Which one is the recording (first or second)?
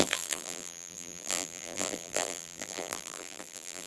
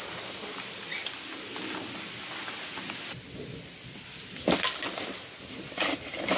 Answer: second